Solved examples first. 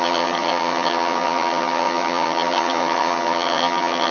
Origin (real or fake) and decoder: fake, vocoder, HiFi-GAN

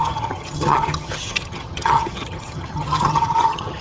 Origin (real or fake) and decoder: fake, vocoder, HiFi-GAN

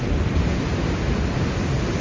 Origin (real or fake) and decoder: real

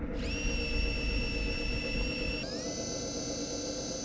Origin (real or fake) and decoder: real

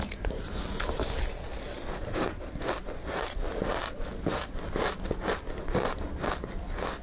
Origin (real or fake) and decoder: real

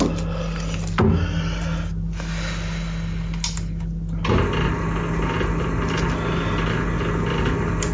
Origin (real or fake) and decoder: real